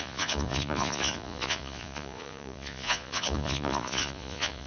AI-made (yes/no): yes